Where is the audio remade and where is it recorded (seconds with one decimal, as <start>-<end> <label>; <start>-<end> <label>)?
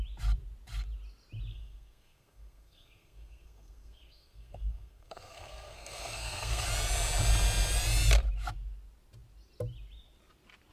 0.0-1.5 recorded; 1.5-6.6 remade; 6.6-10.7 recorded